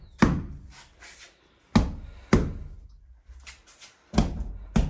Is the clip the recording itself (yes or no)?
yes